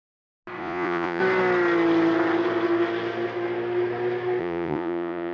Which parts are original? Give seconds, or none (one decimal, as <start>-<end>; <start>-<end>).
0.0-0.6; 1.2-4.4